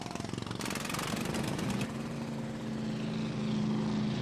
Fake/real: fake